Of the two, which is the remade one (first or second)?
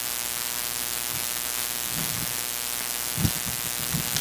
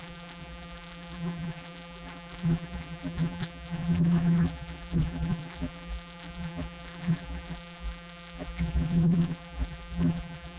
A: second